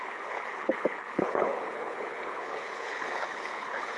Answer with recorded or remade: remade